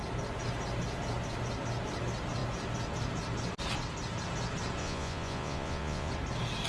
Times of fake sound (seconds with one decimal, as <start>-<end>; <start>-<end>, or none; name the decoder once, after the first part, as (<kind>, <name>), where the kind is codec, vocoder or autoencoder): 4.8-6.1 (vocoder, Vocos)

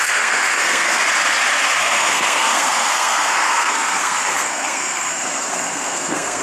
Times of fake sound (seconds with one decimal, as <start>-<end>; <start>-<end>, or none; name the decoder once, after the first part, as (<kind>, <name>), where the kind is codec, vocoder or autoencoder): 0.0-1.0 (codec, SNAC); 1.8-6.4

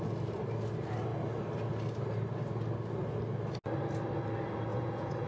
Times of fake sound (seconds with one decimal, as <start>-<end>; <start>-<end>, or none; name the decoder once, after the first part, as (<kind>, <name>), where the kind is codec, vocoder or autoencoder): 4.7-5.3 (vocoder, Vocos)